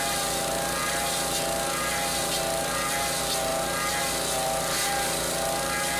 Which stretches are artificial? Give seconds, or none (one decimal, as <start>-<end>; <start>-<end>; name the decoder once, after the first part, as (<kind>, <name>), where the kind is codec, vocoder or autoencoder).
none